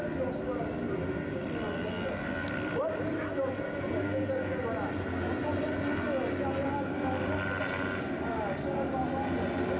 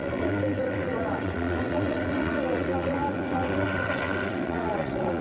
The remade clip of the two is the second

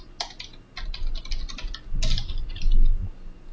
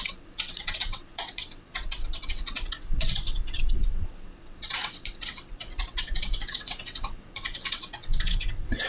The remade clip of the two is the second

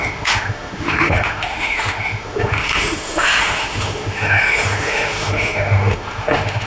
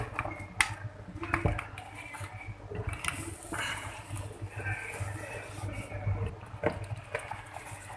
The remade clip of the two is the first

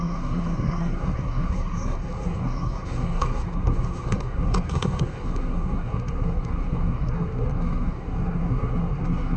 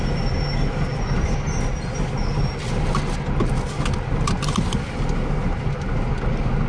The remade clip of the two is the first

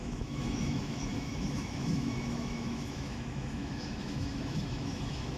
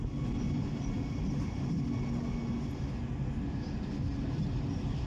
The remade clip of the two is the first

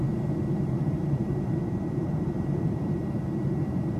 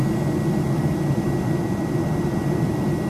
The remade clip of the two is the first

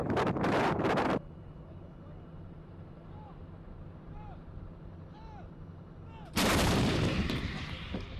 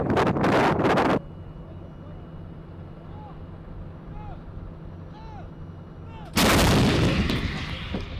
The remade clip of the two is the first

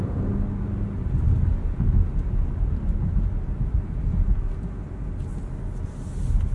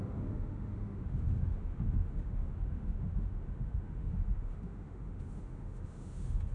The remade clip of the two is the second